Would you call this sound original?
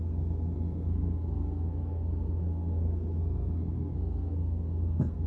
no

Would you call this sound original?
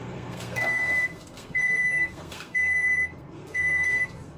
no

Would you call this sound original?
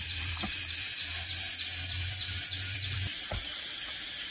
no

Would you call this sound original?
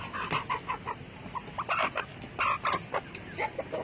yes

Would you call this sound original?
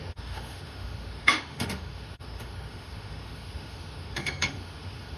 no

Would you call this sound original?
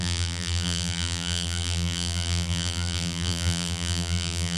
no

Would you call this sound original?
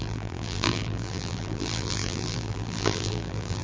no